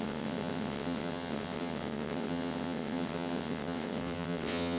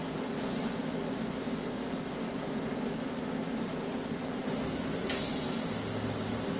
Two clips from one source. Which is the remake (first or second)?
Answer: first